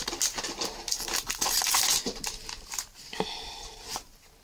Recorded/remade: recorded